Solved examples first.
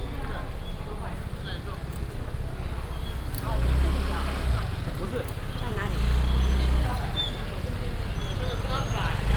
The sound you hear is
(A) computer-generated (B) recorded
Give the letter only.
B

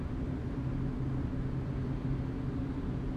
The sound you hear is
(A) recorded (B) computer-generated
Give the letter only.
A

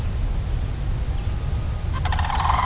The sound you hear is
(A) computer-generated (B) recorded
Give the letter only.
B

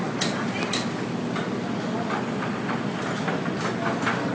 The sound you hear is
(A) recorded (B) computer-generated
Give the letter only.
A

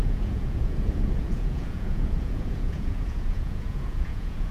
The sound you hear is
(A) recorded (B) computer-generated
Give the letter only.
B